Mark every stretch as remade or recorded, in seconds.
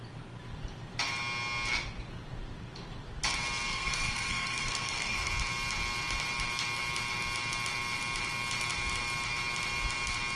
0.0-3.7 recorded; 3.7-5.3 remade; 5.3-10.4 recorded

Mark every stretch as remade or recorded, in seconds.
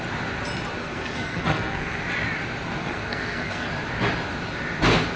0.0-0.8 recorded; 0.8-2.0 remade; 2.0-2.8 recorded; 2.8-3.7 remade; 3.7-5.2 recorded